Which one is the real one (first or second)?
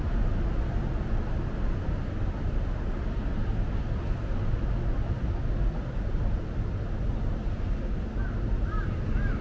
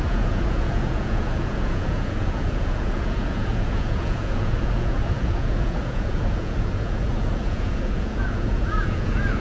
first